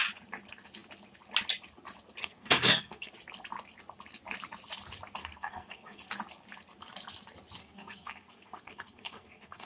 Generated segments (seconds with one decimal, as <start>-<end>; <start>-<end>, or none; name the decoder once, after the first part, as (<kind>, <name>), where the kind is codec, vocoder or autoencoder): 2.2-3.1 (codec, SNAC); 5.2-6.0; 7.6-9.7